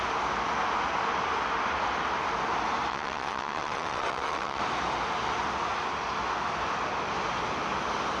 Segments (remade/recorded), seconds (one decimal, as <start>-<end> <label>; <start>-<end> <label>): 0.0-2.9 recorded; 2.9-4.6 remade; 4.6-8.2 recorded